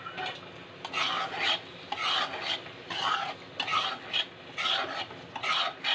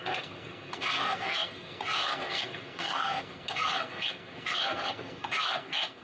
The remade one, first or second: second